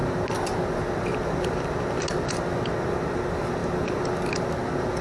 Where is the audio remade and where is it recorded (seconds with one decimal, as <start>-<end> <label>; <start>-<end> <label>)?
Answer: 0.0-5.0 recorded